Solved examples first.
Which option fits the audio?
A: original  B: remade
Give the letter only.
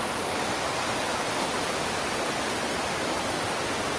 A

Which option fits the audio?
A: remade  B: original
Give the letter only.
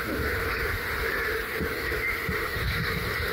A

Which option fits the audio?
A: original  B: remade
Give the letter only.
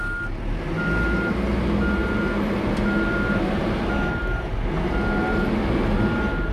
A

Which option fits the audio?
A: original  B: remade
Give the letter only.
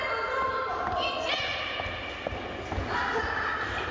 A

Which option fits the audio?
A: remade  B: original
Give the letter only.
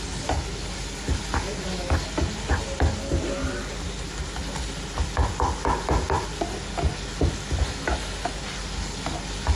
B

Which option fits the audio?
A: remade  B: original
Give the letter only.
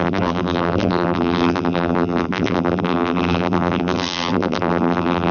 A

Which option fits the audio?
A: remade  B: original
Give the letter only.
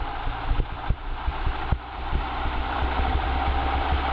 A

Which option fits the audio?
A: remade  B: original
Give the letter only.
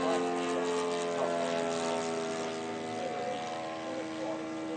B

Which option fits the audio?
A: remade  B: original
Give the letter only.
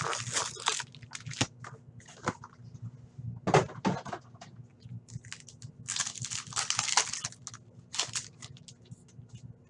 B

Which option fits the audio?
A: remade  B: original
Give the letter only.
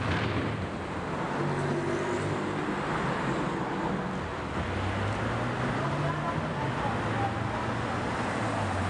B